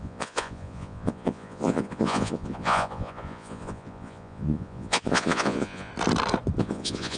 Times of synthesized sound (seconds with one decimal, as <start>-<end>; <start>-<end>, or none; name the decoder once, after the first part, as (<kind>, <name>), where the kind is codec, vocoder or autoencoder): 0.0-5.9 (vocoder, Vocos); 6.6-7.2